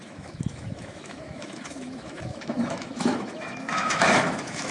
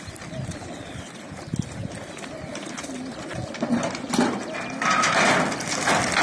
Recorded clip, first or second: second